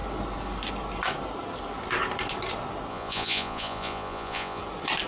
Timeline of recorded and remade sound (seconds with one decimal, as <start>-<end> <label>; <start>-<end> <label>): 0.0-2.9 recorded; 2.9-4.6 remade; 4.6-5.1 recorded